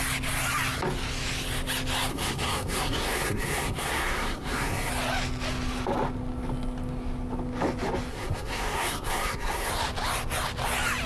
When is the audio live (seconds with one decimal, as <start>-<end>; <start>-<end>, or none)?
0.0-2.1; 4.9-8.1; 9.7-11.1